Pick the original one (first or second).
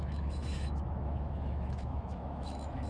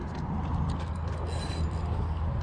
second